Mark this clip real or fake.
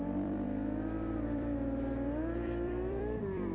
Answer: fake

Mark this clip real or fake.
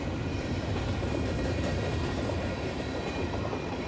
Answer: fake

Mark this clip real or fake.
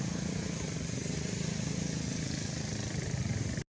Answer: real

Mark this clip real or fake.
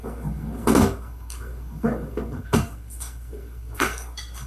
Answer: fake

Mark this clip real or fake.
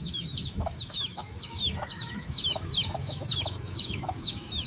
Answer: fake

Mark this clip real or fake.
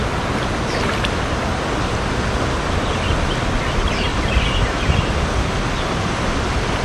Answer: real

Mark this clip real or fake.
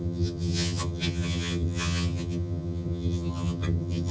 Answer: fake